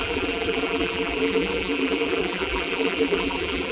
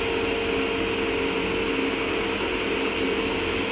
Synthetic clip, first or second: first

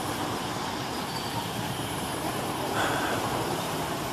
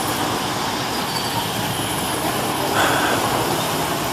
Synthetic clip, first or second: first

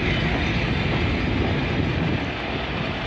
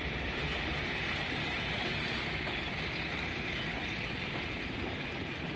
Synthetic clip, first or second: second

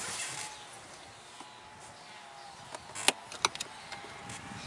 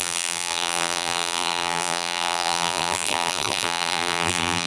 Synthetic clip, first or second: second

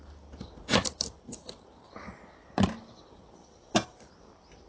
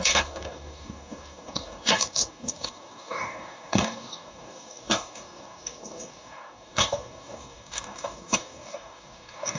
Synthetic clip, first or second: second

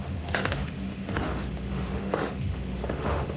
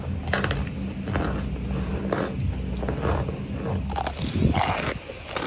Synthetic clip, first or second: first